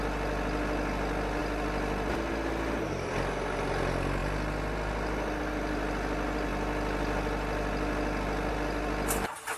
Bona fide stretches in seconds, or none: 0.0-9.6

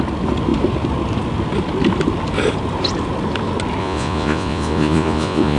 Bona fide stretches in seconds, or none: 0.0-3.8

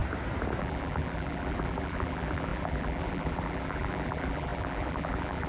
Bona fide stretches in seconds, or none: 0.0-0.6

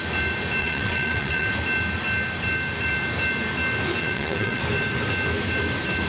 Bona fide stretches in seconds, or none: 0.0-0.6; 1.5-4.0; 4.6-6.1

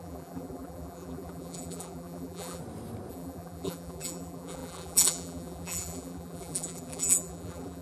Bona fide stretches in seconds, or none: 2.6-3.1

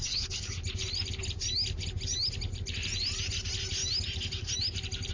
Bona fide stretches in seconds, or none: 0.6-5.1